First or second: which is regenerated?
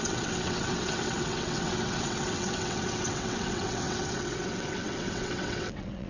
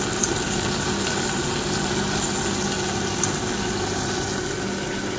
first